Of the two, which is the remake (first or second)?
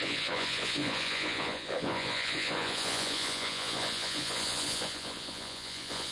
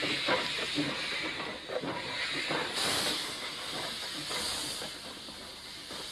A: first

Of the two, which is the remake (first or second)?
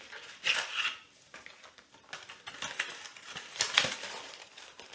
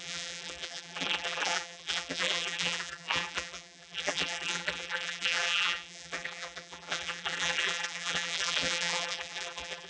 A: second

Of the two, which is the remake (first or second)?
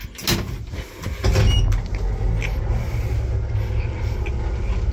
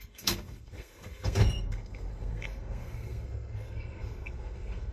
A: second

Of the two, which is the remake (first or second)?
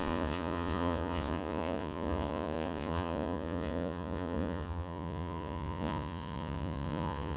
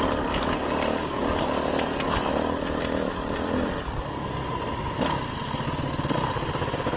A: first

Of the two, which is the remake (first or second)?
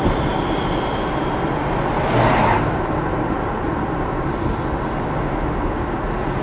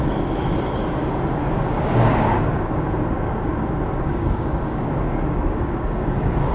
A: second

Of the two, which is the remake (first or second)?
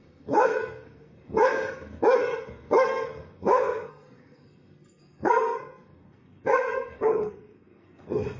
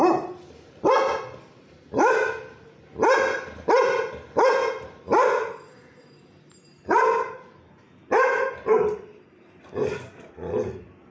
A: first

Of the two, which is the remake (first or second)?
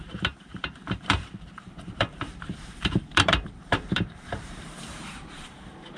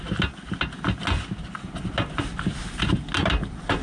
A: first